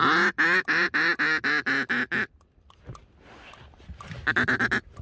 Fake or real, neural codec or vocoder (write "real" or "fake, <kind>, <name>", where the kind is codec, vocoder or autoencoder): real